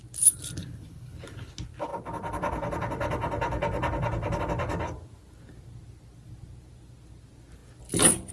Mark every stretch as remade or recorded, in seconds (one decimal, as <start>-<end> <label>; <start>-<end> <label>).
0.0-0.6 recorded; 0.6-1.5 remade; 1.5-8.3 recorded

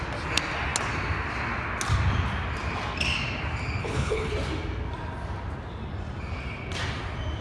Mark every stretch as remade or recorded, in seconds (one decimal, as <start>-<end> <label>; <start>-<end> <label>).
0.0-3.8 recorded; 3.8-4.3 remade; 4.3-7.4 recorded

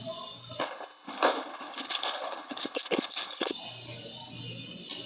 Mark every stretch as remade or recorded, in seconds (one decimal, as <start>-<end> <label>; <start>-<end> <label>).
0.0-0.6 recorded; 0.6-3.5 remade; 3.5-5.1 recorded

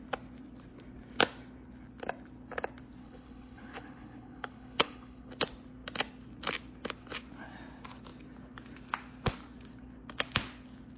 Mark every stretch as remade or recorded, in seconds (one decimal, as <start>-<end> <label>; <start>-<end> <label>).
0.0-3.0 recorded; 3.0-5.3 remade; 5.3-11.0 recorded